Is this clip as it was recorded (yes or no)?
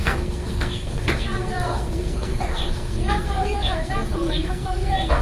no